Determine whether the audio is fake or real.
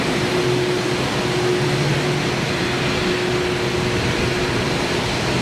real